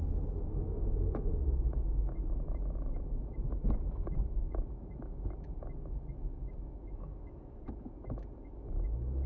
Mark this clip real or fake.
fake